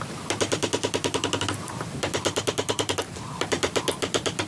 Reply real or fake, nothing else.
fake